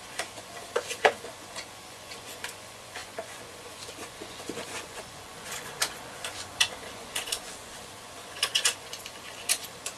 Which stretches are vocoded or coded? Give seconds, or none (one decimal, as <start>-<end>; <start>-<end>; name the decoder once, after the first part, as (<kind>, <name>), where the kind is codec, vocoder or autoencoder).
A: 0.0-10.0 (vocoder, Vocos)